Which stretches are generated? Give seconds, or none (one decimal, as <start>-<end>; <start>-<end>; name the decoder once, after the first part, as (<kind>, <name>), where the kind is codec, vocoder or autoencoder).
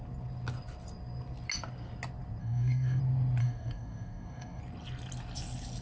2.4-3.0 (codec, DAC); 3.4-4.6